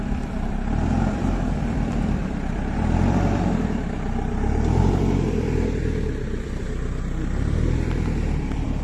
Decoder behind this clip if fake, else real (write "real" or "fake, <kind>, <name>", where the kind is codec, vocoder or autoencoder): fake, vocoder, BigVGAN v2